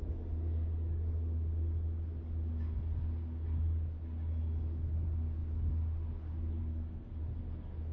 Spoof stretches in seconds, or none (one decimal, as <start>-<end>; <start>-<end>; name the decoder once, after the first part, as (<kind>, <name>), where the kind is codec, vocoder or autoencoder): 6.6-7.2 (codec, SNAC)